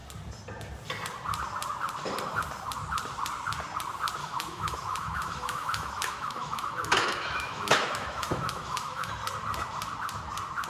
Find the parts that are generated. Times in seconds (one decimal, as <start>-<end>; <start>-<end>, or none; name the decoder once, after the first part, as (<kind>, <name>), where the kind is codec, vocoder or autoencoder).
4.2-9.1 (autoencoder, DAC-VAE)